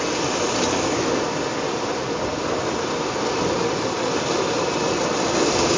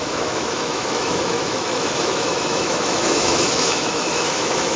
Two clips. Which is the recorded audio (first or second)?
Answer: first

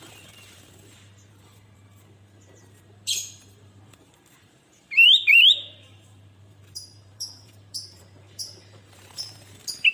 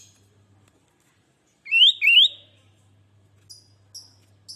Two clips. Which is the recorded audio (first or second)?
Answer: second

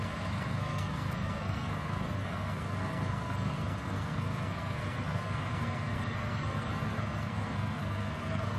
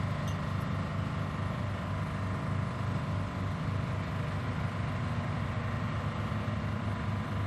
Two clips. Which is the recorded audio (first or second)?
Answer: second